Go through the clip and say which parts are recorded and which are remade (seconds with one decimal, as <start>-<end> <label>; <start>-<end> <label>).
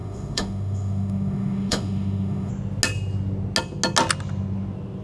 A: 0.0-2.5 remade; 2.5-5.0 recorded